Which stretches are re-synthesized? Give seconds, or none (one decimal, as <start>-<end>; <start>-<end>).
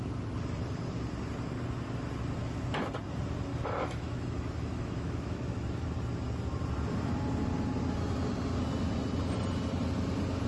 3.5-5.9